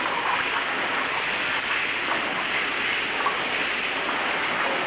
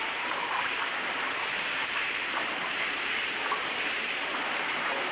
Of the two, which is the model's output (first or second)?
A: second